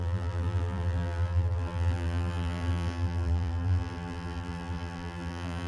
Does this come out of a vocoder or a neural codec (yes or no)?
yes